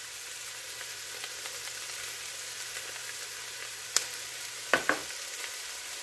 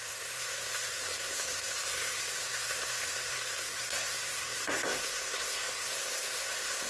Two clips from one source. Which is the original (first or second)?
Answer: first